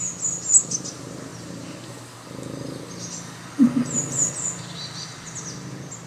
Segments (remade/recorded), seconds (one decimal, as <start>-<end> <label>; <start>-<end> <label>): 0.0-6.1 recorded